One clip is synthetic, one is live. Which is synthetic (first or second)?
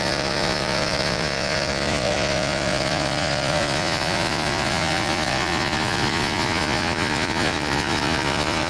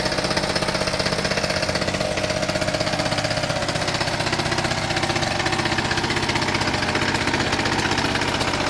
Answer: first